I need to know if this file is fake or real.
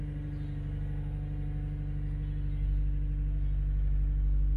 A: real